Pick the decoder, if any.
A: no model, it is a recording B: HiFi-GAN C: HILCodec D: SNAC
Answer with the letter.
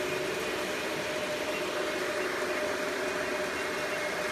A